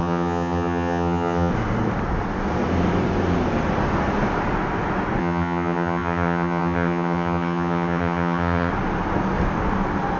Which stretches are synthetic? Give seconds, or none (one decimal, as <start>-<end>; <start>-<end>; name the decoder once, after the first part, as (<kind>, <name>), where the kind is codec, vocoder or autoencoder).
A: 0.0-1.5 (vocoder, HiFi-GAN); 5.2-8.7